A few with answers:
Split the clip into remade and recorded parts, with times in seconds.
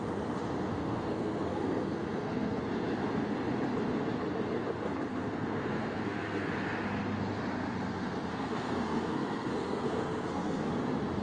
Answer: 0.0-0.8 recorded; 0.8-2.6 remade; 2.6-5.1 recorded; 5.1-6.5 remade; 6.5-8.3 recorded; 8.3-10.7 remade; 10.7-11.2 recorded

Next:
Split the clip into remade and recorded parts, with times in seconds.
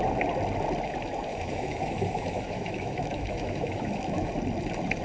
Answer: 0.0-1.3 recorded; 1.3-4.3 remade; 4.3-5.0 recorded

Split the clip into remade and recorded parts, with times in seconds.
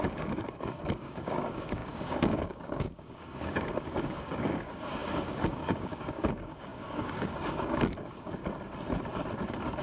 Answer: 0.0-8.4 remade; 8.4-9.8 recorded